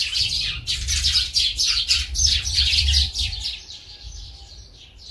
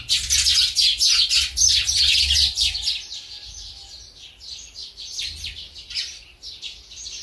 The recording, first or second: second